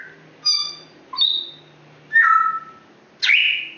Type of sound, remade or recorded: recorded